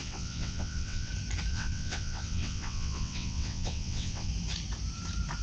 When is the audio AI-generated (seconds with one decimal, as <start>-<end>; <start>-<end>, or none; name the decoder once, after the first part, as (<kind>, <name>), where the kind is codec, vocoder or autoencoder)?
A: 0.0-1.1 (vocoder, WaveNeXt); 1.5-4.3